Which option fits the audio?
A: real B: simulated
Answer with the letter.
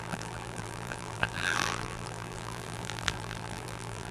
B